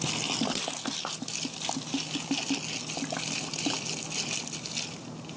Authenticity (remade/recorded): recorded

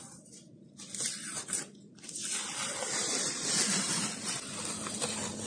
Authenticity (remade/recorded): recorded